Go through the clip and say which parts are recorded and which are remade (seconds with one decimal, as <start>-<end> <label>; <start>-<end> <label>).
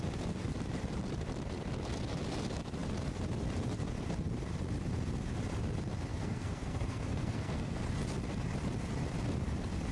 0.0-6.1 recorded; 6.1-7.8 remade; 7.8-9.9 recorded